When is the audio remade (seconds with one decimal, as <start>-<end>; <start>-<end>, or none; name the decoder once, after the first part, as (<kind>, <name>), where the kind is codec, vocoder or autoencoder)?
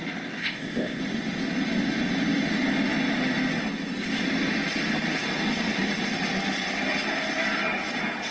0.4-1.0 (codec, ZipCodec)